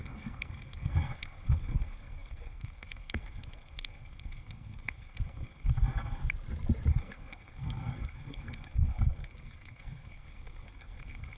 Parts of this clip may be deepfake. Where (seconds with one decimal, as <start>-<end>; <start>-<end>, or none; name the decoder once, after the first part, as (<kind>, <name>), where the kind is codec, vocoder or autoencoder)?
0.0-6.2 (codec, SNAC); 6.9-11.4